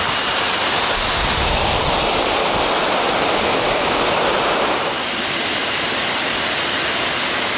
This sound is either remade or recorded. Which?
recorded